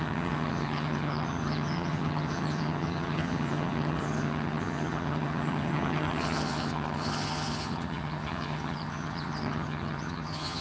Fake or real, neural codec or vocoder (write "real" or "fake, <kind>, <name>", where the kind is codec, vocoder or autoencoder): fake, vocoder, HiFi-GAN